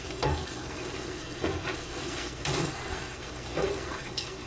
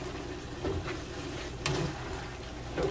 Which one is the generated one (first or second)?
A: first